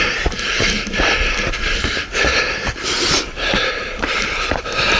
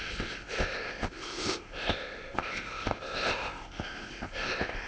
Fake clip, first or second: second